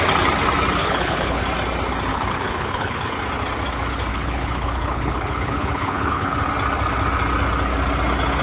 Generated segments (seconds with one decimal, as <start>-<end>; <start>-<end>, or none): 0.8-1.4; 2.1-3.1; 4.1-6.4